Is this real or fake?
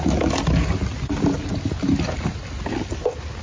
real